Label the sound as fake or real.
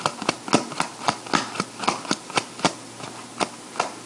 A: real